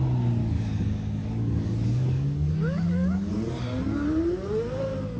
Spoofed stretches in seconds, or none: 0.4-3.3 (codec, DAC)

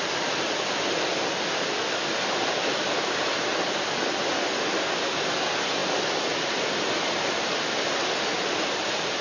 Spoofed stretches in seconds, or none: none

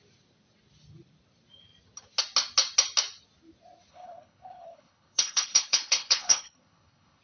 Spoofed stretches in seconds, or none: 3.9-7.2 (codec, HILCodec)

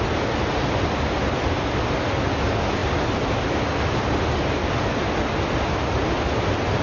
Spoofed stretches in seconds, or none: none

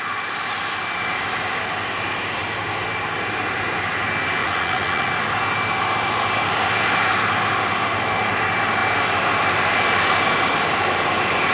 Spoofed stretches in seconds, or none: 4.4-5.1 (vocoder, Vocos)